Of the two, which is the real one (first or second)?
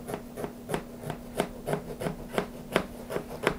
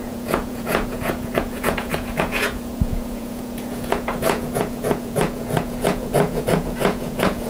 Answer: first